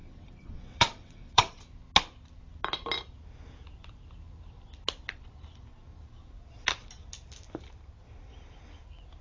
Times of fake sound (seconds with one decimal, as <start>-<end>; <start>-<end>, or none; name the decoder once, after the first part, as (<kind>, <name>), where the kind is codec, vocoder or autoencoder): 0.0-1.6 (vocoder, WaveNeXt)